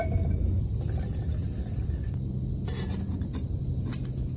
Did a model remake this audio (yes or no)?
no